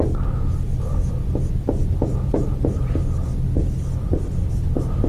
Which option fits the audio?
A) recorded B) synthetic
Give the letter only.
A